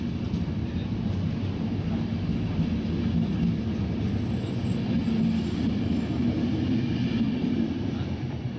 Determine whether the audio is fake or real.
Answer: real